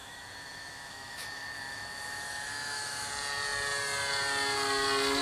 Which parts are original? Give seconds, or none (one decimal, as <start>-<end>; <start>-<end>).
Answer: 3.1-5.2